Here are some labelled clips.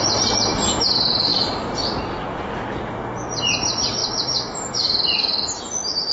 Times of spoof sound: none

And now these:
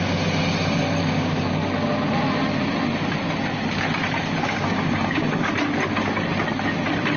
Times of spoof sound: 1.0-1.5; 4.4-5.5